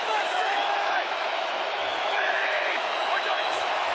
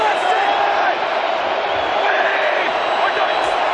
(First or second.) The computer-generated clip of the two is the first